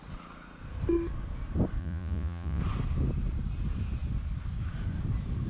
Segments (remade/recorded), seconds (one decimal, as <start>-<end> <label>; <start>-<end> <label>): 0.0-1.8 recorded; 1.8-2.6 remade; 2.6-5.5 recorded